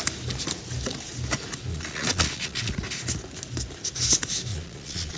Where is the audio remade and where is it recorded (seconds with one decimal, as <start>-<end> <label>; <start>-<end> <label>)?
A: 0.0-1.7 recorded; 1.7-2.7 remade; 2.7-4.5 recorded; 4.5-5.2 remade